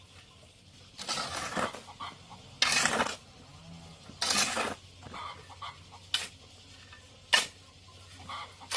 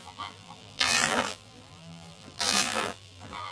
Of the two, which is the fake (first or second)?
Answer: second